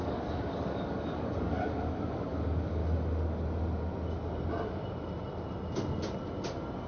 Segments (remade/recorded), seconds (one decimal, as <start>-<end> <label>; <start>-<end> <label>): 0.0-2.8 remade; 2.8-6.9 recorded